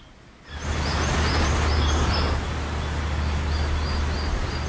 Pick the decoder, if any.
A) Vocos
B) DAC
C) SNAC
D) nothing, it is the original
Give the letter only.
D